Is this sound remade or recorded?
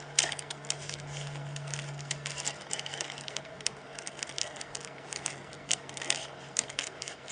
remade